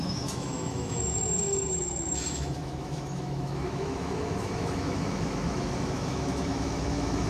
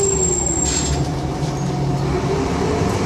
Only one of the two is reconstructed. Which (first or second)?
first